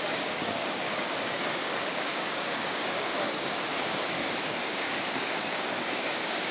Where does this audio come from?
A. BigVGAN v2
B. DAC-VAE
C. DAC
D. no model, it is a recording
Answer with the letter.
C